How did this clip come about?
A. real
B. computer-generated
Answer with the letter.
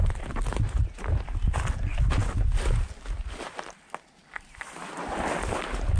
A